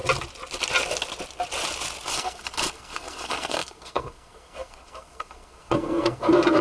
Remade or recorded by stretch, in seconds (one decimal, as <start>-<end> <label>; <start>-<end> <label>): 0.0-2.1 recorded; 2.1-6.6 remade